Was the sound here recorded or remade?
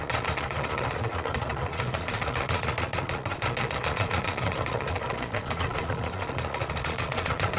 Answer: remade